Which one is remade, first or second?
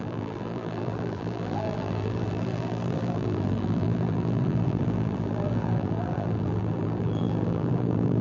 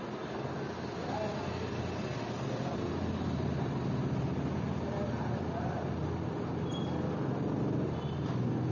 first